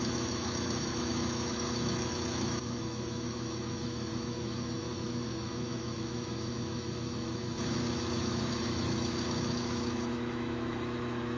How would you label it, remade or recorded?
remade